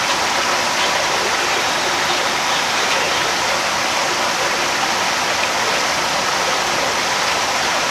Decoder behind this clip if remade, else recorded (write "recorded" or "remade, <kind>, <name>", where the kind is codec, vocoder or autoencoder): recorded